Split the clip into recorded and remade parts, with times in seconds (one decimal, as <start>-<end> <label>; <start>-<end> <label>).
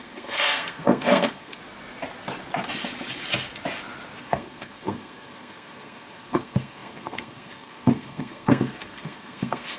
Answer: 0.0-1.6 remade; 1.6-4.2 recorded; 4.2-9.8 remade